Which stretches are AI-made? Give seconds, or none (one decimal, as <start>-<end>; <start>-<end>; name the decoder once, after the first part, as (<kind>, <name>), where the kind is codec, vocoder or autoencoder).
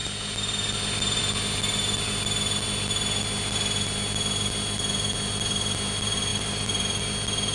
6.3-7.0 (vocoder, BigVGAN v2)